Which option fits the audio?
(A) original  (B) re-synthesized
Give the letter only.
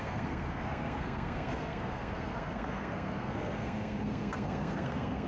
B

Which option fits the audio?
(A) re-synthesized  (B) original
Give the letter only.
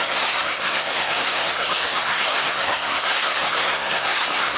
A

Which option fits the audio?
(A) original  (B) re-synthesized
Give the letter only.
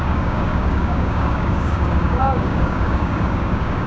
B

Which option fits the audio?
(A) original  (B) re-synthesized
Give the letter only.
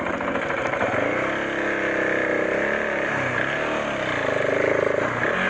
A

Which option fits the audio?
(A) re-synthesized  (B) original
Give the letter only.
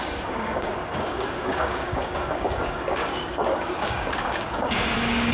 A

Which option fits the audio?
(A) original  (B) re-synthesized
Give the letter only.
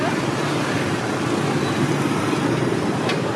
A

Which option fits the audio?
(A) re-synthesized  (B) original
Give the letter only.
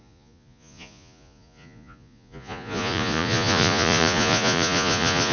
A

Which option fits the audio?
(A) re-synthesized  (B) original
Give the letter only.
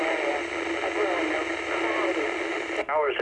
B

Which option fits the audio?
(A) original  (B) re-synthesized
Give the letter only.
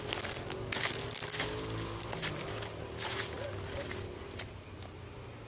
A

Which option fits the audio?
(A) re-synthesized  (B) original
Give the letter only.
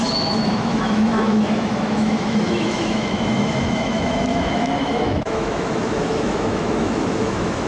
A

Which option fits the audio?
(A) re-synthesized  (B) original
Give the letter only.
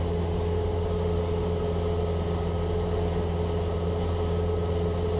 B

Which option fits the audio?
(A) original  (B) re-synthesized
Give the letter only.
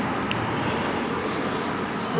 A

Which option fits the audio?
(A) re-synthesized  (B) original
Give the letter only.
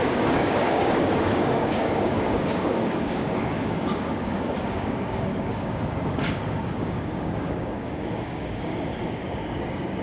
A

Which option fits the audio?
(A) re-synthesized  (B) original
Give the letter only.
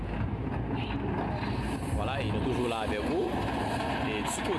B